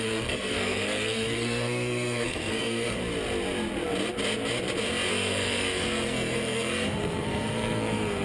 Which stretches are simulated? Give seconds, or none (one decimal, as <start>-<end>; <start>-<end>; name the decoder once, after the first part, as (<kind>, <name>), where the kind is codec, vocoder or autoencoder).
0.0-3.0 (codec, SNAC); 5.1-8.2